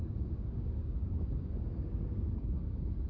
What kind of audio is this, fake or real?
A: fake